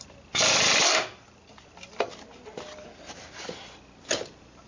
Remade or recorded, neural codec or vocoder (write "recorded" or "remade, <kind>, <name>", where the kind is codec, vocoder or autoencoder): recorded